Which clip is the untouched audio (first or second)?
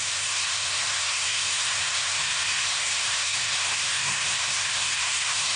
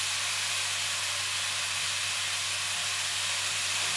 second